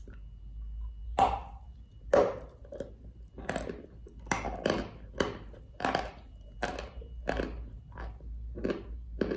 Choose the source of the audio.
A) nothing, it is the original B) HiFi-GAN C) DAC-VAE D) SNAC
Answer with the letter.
A